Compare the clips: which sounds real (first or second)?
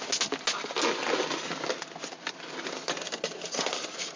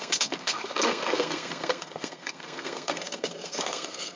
first